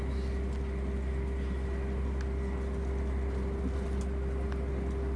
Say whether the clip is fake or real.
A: real